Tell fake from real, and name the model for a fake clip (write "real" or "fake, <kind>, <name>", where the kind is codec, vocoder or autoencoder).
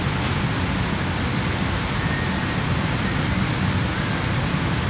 real